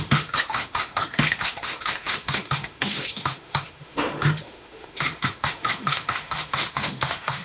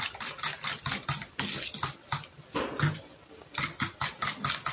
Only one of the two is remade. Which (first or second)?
first